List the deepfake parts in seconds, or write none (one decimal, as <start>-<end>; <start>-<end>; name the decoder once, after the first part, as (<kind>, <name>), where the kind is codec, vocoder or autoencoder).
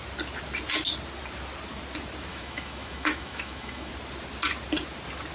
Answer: 2.3-3.9 (autoencoder, DAC-VAE)